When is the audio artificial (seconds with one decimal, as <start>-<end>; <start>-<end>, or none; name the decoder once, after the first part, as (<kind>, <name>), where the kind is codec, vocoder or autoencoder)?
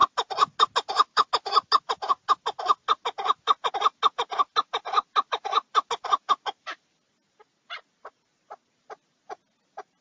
none